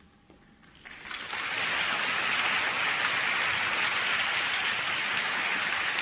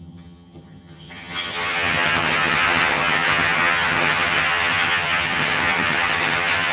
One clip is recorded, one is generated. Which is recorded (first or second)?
first